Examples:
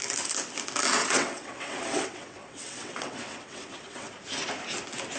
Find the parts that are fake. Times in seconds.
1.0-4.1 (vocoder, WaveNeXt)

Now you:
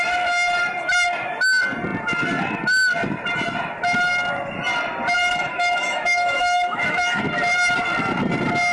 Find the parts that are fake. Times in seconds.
5.2-7.2 (autoencoder, DAC-VAE)

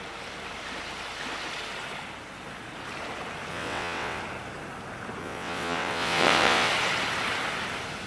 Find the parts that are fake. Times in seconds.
3.5-4.2 (vocoder, WaveNeXt); 5.2-6.7

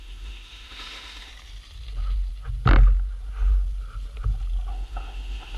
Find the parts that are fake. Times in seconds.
0.0-1.3 (autoencoder, DAC-VAE); 4.7-5.6

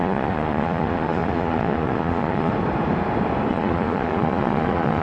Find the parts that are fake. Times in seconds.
0.0-2.5 (vocoder, Vocos); 3.5-5.0

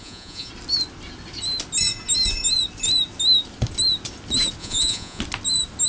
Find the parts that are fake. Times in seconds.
0.0-0.5 (vocoder, Vocos); 4.6-5.2

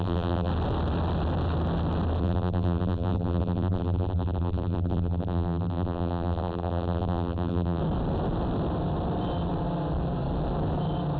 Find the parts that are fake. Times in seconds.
0.0-0.5 (vocoder, BigVGAN v2); 2.2-7.8

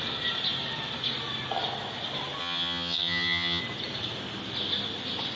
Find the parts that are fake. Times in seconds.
2.4-3.6 (vocoder, HiFi-GAN)